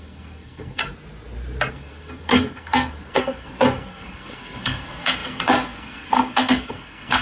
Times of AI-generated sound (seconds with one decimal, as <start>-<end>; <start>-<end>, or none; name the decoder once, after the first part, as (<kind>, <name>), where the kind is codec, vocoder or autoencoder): 0.0-0.8 (codec, SNAC); 1.7-7.2